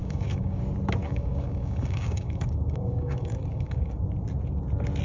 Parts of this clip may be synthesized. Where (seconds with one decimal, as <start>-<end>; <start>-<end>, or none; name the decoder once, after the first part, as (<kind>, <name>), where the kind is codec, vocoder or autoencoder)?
0.0-0.6 (codec, DAC); 1.0-4.0